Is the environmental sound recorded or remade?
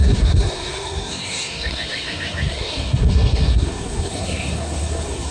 remade